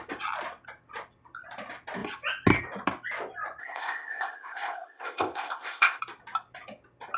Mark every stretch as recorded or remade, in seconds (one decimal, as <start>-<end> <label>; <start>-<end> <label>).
0.0-3.6 recorded; 3.6-6.0 remade; 6.0-7.2 recorded